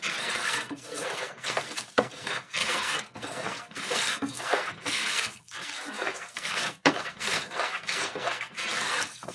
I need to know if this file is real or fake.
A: fake